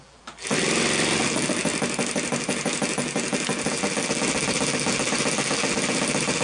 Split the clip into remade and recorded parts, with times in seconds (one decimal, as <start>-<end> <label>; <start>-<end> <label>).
0.0-0.5 remade; 0.5-1.2 recorded; 1.2-1.7 remade; 1.7-2.4 recorded; 2.4-6.4 remade

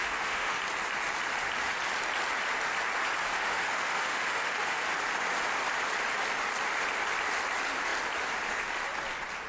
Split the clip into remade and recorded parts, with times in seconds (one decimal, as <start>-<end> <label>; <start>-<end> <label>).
0.0-0.6 remade; 0.6-3.3 recorded; 3.3-4.9 remade; 4.9-9.5 recorded

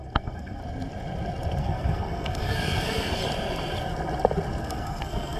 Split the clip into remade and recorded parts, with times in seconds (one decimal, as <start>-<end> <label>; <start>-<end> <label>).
0.0-0.6 remade; 0.6-1.6 recorded; 1.6-3.2 remade; 3.2-4.6 recorded; 4.6-5.4 remade

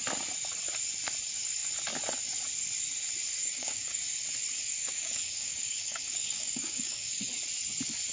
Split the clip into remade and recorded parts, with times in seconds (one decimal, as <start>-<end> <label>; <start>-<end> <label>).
0.0-3.4 recorded; 3.4-4.0 remade; 4.0-4.8 recorded; 4.8-7.3 remade; 7.3-8.1 recorded

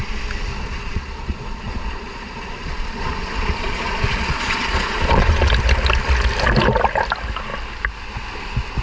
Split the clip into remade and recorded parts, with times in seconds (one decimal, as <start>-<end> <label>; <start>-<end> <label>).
0.0-0.5 recorded; 0.5-5.5 remade; 5.5-8.8 recorded

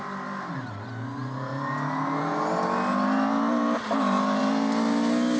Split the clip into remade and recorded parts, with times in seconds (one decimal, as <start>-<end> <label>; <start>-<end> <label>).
0.0-5.4 recorded